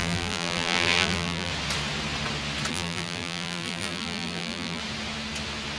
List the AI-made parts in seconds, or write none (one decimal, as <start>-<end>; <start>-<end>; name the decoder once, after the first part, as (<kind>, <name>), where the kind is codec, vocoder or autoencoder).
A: 0.0-1.5 (vocoder, BigVGAN v2); 2.7-4.8